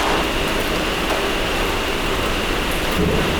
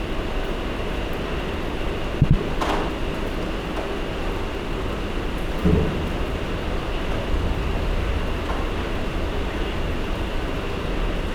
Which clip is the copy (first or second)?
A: first